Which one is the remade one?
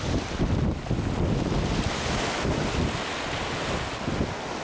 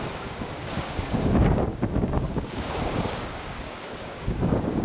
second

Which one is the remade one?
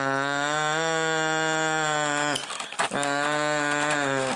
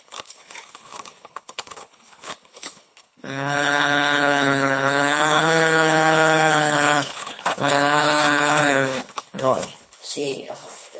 second